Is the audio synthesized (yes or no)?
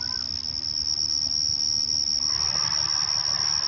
no